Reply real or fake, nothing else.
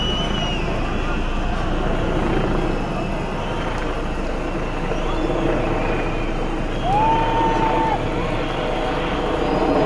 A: real